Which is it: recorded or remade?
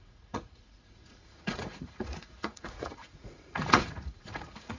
remade